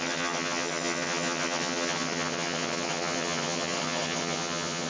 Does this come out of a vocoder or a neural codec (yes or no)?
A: yes